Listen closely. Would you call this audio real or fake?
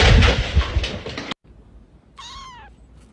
real